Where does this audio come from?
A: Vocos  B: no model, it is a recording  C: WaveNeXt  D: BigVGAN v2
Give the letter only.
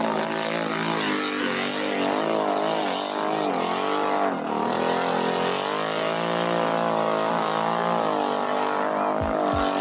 B